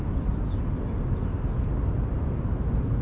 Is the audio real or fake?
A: real